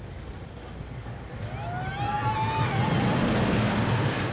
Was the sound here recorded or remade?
recorded